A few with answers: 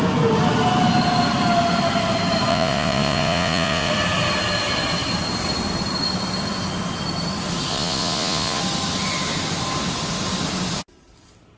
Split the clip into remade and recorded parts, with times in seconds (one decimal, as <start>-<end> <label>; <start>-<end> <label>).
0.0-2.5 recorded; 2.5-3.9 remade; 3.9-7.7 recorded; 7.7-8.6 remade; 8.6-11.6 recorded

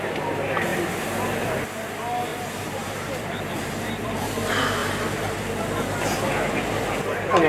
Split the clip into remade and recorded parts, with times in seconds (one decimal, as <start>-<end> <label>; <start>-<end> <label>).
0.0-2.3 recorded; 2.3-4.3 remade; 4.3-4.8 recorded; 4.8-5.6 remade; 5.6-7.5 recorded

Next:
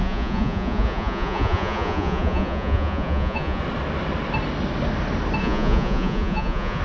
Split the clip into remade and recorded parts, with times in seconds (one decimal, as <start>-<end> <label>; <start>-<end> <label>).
0.0-3.6 remade; 3.6-5.4 recorded; 5.4-6.8 remade

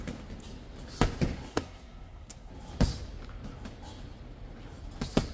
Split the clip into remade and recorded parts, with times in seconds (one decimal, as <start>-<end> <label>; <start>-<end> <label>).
0.0-1.5 recorded; 1.5-2.5 remade; 2.5-5.3 recorded

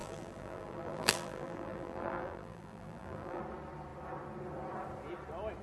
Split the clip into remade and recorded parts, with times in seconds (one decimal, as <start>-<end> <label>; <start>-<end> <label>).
0.0-3.4 remade; 3.4-5.6 recorded

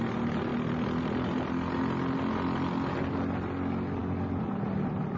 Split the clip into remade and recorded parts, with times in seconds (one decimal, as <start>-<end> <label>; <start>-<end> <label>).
0.0-5.2 recorded